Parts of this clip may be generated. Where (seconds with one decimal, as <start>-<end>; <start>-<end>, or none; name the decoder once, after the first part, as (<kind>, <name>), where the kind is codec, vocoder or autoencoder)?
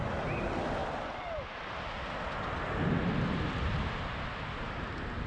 none